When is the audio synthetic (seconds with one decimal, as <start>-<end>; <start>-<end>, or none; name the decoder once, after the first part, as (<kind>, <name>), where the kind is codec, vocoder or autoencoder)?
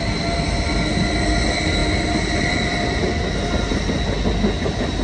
none